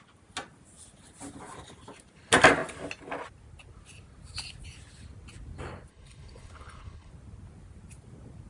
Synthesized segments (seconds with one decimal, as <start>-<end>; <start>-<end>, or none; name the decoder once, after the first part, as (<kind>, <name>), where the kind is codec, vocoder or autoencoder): 5.9-7.1 (codec, HILCodec)